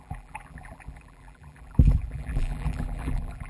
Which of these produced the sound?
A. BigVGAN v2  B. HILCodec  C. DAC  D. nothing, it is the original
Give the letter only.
A